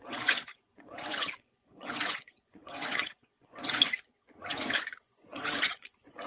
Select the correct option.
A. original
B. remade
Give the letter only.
B